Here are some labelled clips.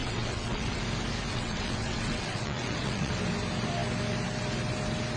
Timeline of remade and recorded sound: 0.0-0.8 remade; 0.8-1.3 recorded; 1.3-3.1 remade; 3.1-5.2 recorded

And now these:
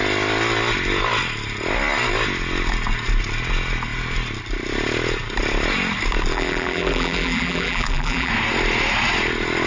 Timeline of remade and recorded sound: 0.0-6.3 recorded; 6.3-8.3 remade; 8.3-9.7 recorded

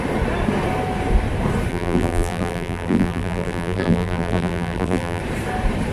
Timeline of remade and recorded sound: 0.0-1.7 recorded; 1.7-5.2 remade; 5.2-5.9 recorded

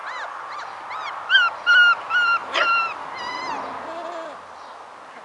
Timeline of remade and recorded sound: 0.0-5.2 recorded

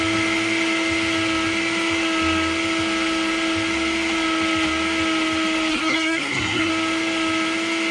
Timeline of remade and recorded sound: 0.0-5.7 recorded; 5.7-6.7 remade; 6.7-7.9 recorded